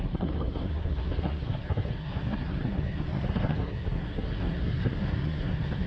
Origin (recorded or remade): remade